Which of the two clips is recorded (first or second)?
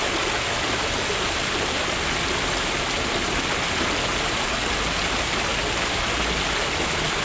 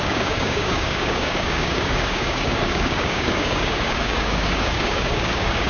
first